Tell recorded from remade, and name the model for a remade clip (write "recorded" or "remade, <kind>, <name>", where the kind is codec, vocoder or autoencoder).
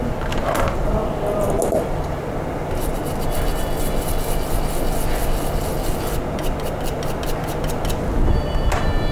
recorded